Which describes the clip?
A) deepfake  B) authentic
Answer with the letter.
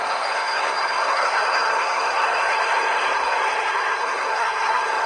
A